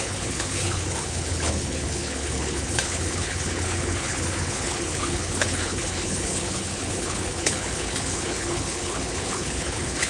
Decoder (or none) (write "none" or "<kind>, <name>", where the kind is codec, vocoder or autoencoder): codec, HILCodec